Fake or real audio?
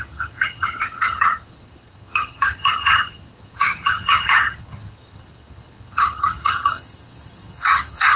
fake